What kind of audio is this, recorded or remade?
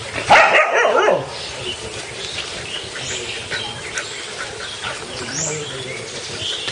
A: recorded